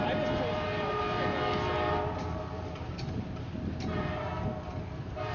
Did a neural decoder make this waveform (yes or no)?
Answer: no